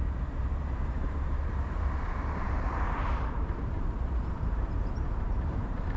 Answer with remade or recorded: remade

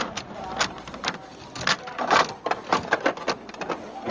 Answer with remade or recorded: recorded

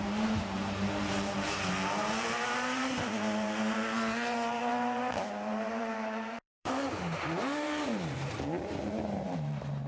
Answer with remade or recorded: remade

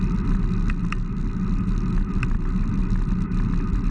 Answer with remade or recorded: recorded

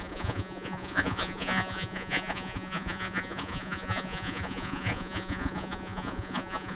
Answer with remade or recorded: remade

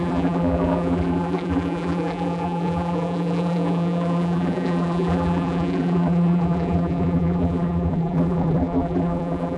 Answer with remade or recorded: remade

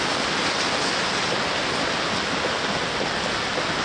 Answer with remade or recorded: recorded